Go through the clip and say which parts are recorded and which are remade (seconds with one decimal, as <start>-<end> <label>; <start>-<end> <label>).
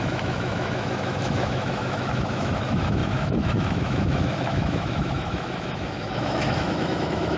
0.0-7.4 remade